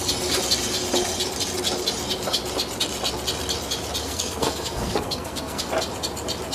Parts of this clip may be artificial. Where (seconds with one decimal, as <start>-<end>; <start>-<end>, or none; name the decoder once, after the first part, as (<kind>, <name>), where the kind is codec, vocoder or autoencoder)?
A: 4.0-5.7 (codec, SNAC)